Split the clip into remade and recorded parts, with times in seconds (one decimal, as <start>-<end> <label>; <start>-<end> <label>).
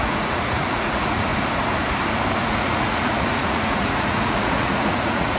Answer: 0.0-1.3 remade; 1.3-2.4 recorded; 2.4-5.4 remade